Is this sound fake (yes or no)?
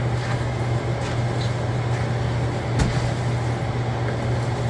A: no